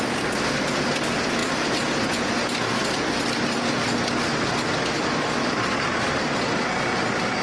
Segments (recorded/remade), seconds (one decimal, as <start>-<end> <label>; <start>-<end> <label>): 0.0-7.4 recorded